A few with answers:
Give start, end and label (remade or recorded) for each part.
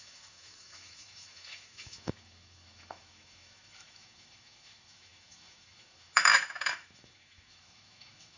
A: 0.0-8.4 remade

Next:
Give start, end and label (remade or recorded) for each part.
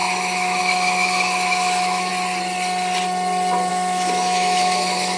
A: 0.0-2.1 remade; 2.1-3.7 recorded; 3.7-5.2 remade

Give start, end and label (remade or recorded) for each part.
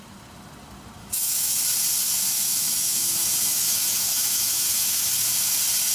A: 0.0-1.0 recorded; 1.0-1.6 remade; 1.6-2.0 recorded; 2.0-5.5 remade; 5.5-5.9 recorded